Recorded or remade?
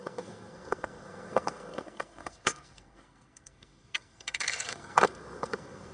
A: remade